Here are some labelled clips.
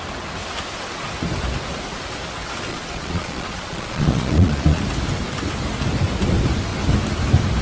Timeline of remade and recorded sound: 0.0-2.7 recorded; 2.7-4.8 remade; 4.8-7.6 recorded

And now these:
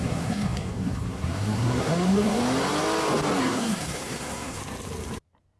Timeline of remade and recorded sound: 0.0-2.4 remade; 2.4-3.4 recorded; 3.4-4.6 remade; 4.6-5.6 recorded

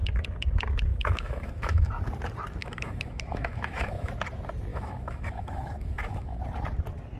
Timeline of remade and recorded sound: 0.0-0.9 recorded; 0.9-1.9 remade; 1.9-2.6 recorded; 2.6-4.1 remade; 4.1-4.7 recorded; 4.7-6.4 remade; 6.4-7.2 recorded

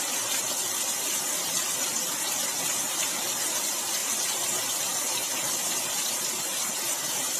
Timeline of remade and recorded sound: 0.0-7.4 recorded